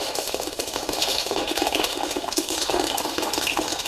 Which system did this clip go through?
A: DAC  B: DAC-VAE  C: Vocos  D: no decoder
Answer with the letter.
B